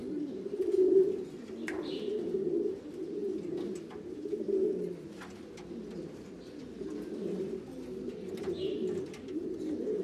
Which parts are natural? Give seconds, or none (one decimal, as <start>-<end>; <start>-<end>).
1.3-10.0